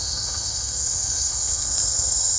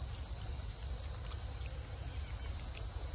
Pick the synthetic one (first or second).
first